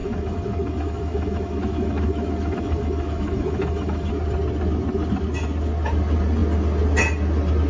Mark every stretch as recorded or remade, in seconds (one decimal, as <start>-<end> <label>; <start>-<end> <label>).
0.0-4.1 remade; 4.1-7.7 recorded